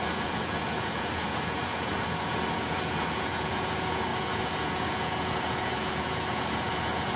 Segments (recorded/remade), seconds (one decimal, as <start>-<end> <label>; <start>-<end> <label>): 0.0-7.2 remade